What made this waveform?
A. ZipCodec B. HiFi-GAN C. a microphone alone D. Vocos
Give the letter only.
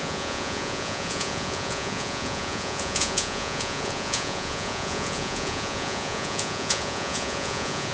D